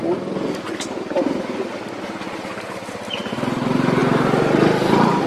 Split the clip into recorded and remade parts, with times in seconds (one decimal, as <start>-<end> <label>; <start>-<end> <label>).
0.0-5.3 recorded